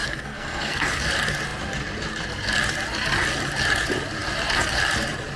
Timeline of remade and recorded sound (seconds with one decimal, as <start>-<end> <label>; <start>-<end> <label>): 0.0-1.0 remade; 1.0-5.4 recorded